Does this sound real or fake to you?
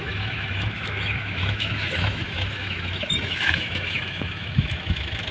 fake